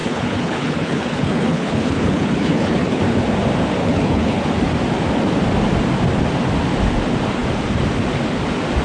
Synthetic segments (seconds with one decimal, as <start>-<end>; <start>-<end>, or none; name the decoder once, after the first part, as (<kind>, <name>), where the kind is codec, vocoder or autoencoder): 0.0-3.0 (codec, HILCodec); 3.8-4.5